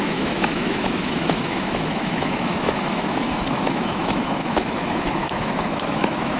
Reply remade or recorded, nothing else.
remade